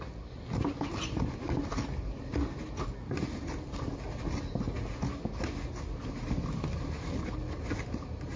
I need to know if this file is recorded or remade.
recorded